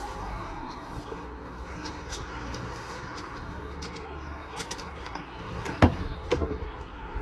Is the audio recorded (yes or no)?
no